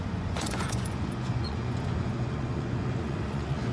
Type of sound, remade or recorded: remade